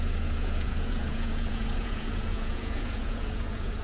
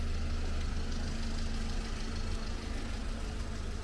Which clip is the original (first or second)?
second